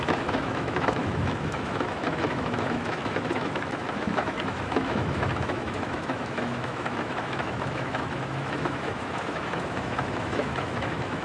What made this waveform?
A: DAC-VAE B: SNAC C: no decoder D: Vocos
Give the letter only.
A